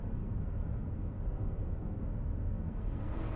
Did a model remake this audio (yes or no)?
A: yes